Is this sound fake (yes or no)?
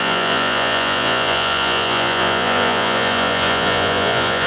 yes